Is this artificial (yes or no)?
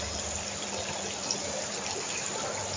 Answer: no